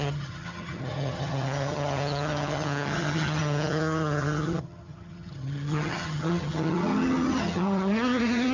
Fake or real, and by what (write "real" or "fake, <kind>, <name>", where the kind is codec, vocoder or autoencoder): fake, vocoder, HiFi-GAN